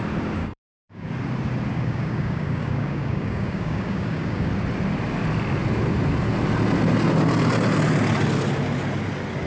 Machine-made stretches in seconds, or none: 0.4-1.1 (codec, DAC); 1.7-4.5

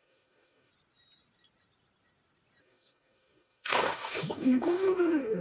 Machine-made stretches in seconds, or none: 0.0-0.7 (codec, DAC); 2.6-5.4